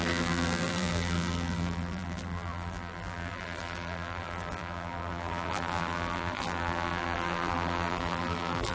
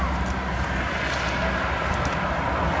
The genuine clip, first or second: second